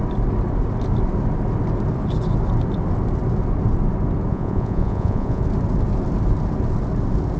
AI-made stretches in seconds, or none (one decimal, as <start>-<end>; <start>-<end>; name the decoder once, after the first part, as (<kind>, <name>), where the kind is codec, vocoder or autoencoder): 4.3-5.4 (vocoder, Vocos)